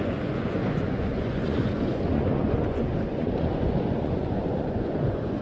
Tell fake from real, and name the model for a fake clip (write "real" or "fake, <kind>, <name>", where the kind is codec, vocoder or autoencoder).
fake, vocoder, Vocos